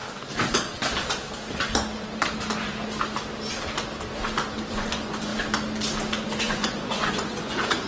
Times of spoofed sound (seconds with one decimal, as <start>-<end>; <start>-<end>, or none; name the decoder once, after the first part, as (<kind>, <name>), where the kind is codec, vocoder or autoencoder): 4.7-5.3 (vocoder, Vocos); 6.4-7.9